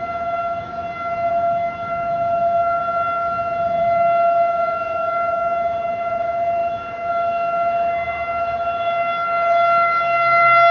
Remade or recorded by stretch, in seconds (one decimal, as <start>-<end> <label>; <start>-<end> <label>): 0.0-0.7 remade; 0.7-1.3 recorded; 1.3-2.8 remade; 2.8-3.8 recorded; 3.8-10.7 remade